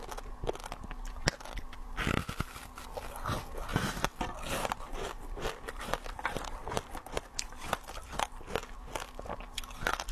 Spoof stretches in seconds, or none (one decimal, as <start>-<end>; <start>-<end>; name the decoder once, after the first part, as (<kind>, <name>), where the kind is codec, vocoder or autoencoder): none